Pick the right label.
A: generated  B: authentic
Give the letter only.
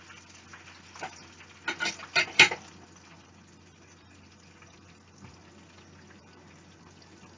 B